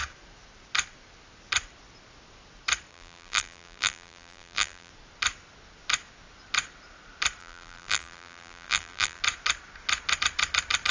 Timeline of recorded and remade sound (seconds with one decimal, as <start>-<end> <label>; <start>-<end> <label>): 0.0-2.9 recorded; 2.9-4.9 remade; 4.9-7.4 recorded; 7.4-9.2 remade; 9.2-10.9 recorded